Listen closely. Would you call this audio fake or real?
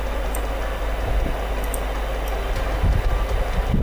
real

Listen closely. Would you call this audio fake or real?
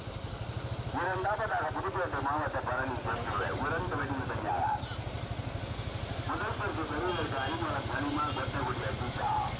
real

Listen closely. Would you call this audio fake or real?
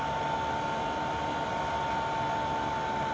real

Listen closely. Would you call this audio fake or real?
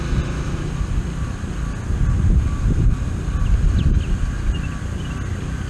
real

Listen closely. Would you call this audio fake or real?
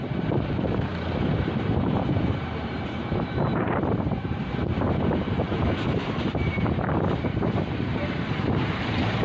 fake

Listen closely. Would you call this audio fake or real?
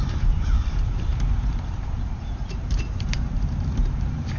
fake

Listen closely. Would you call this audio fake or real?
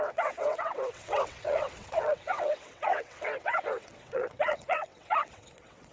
fake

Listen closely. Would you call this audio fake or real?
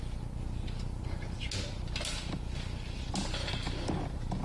real